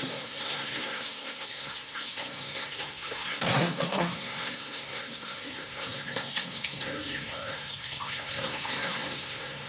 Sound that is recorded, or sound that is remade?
remade